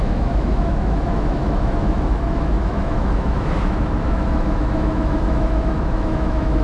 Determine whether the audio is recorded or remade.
remade